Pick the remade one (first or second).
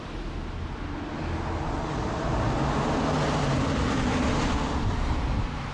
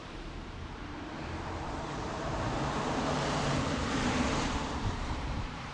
second